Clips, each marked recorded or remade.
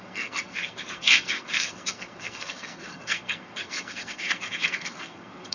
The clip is remade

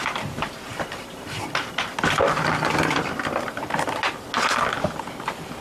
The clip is recorded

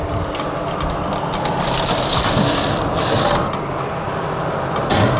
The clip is recorded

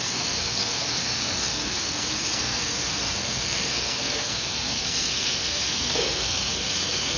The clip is remade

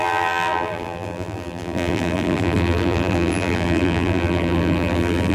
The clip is remade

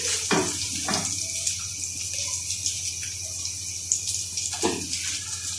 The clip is recorded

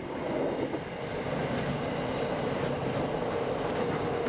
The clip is recorded